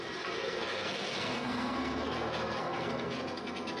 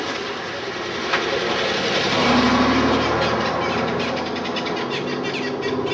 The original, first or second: second